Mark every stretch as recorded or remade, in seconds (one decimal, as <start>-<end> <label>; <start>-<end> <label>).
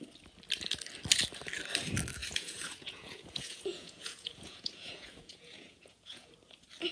0.0-2.2 recorded; 2.2-6.3 remade; 6.3-6.9 recorded